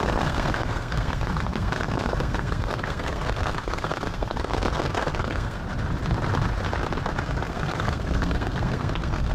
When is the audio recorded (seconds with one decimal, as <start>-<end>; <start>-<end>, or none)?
5.6-7.2